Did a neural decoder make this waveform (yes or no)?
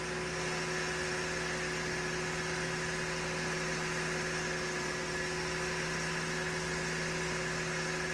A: no